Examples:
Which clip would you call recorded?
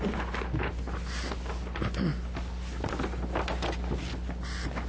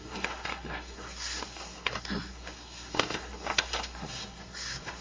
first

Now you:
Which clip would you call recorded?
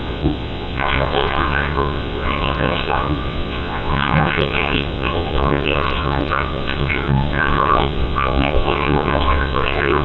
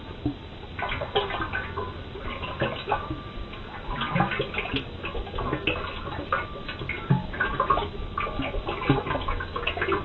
second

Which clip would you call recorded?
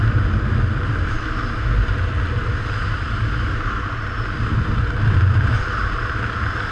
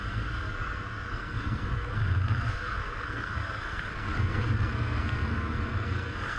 first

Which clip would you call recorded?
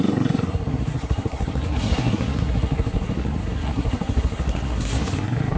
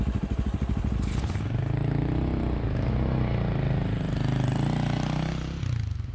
second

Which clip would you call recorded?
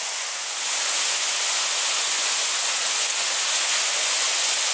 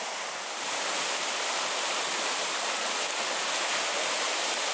second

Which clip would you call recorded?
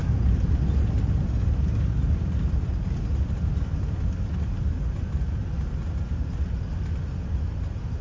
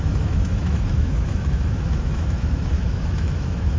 first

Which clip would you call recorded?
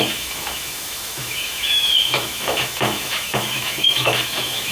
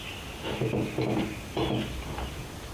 second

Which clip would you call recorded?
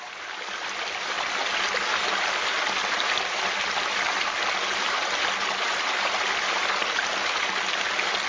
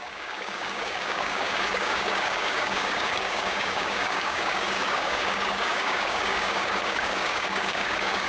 first